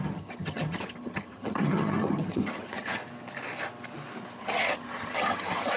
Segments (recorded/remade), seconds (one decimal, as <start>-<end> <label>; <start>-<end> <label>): 0.0-3.0 remade; 3.0-4.4 recorded; 4.4-5.8 remade